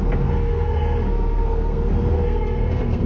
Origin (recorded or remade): remade